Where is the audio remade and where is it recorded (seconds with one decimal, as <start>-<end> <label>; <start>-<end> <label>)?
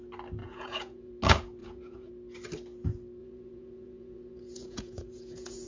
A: 0.0-0.4 recorded; 0.4-1.1 remade; 1.1-1.6 recorded; 1.6-2.1 remade; 2.1-3.2 recorded; 3.2-5.7 remade